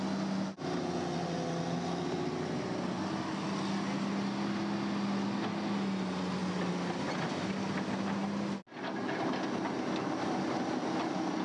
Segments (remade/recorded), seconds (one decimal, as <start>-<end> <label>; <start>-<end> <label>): 0.0-11.4 recorded